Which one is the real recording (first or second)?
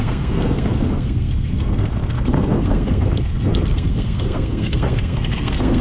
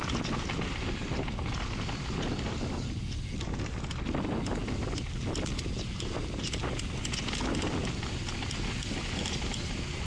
second